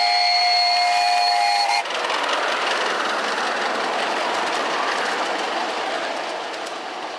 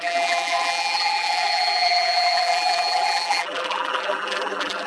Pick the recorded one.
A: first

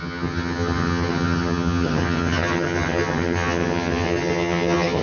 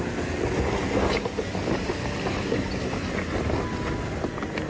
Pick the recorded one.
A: second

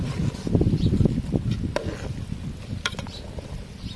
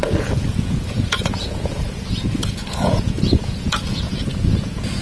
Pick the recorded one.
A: first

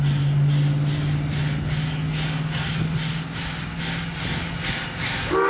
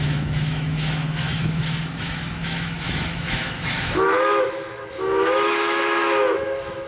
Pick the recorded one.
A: first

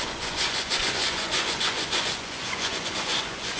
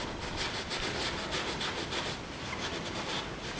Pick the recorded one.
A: second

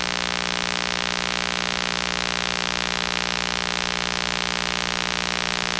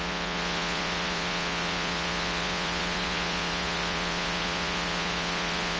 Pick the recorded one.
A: first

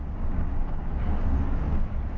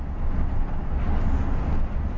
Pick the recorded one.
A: second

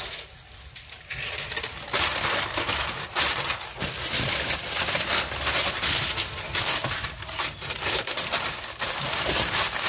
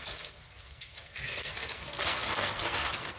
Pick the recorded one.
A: first